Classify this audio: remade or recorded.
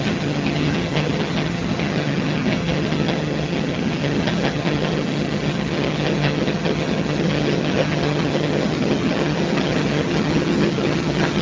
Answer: remade